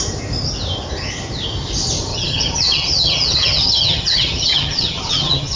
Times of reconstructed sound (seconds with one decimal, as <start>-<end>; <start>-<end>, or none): 2.1-5.6